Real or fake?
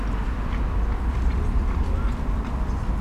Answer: real